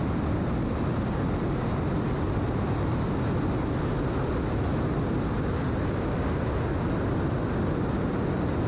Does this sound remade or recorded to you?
recorded